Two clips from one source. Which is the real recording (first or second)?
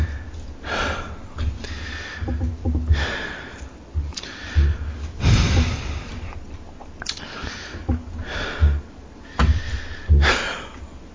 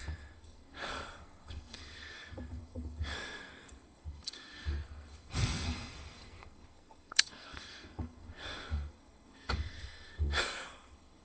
first